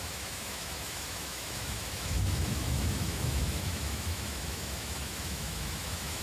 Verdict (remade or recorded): remade